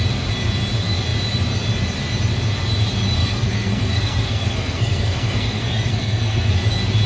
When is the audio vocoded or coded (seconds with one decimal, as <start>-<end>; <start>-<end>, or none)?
3.2-6.5